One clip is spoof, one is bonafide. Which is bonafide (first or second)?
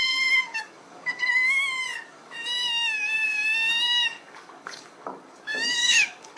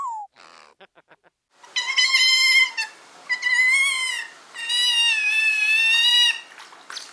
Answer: second